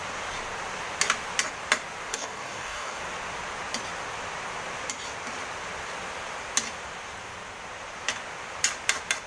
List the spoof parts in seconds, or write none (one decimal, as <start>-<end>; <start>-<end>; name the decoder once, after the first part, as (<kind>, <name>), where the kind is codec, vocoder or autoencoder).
2.1-3.0 (codec, DAC)